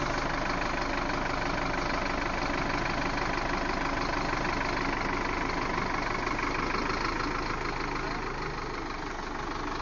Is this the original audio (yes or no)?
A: yes